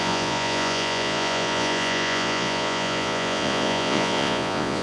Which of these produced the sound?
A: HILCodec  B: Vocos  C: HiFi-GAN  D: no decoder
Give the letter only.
B